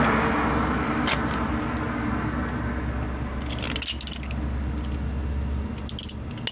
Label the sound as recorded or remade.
recorded